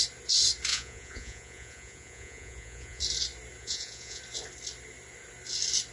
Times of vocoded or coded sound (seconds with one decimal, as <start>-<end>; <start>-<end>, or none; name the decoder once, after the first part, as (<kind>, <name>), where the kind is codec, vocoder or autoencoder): 0.7-3.0 (vocoder, Vocos); 3.6-4.2